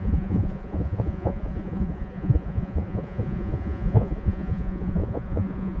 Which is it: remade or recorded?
remade